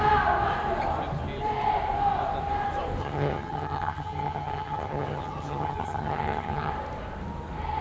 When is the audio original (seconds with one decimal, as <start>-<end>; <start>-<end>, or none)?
0.0-3.0; 6.7-7.8